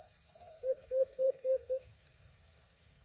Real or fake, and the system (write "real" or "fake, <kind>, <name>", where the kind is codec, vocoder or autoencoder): fake, codec, SNAC